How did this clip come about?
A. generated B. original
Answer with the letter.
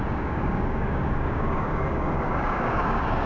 A